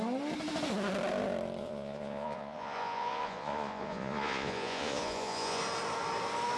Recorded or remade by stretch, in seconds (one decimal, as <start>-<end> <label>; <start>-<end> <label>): 0.0-1.6 recorded; 1.6-5.6 remade; 5.6-6.6 recorded